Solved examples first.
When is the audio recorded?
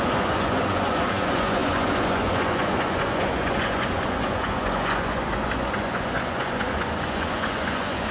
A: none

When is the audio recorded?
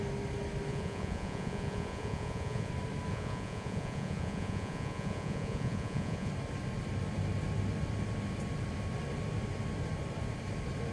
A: 0.0-0.7; 2.7-3.1; 6.3-10.9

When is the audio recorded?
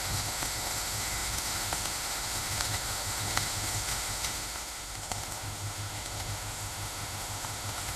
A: none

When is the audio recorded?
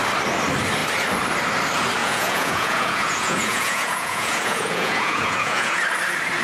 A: 0.0-2.0; 5.8-6.4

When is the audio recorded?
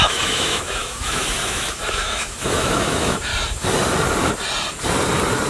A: 3.3-5.5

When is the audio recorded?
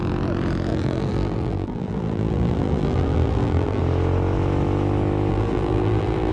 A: 0.0-0.7; 3.8-5.3